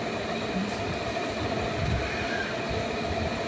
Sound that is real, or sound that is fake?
real